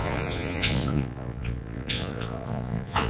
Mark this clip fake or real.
fake